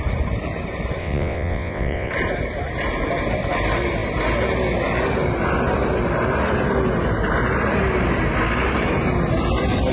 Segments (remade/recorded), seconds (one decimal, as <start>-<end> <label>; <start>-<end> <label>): 0.0-1.0 recorded; 1.0-2.1 remade; 2.1-9.9 recorded